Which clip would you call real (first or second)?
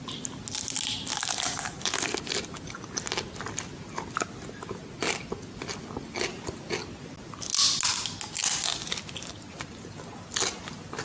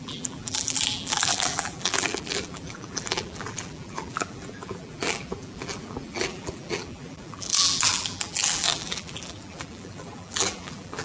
first